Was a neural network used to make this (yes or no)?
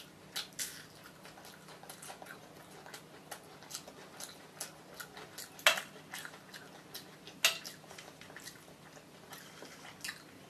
no